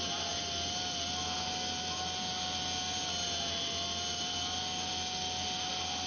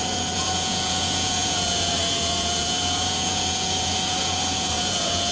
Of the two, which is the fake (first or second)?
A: second